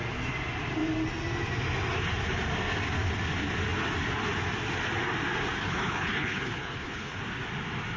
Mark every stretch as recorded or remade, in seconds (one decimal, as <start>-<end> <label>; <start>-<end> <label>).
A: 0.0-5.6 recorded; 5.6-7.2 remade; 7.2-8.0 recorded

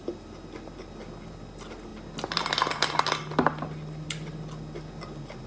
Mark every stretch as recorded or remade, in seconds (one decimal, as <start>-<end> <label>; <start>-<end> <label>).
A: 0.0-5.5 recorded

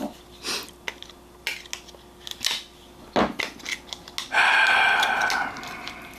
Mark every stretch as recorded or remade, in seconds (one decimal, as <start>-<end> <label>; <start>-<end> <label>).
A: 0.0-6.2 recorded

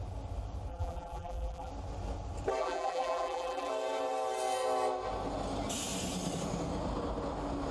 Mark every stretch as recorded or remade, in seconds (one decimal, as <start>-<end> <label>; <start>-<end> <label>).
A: 0.0-0.7 recorded; 0.7-1.7 remade; 1.7-2.6 recorded; 2.6-3.7 remade; 3.7-7.7 recorded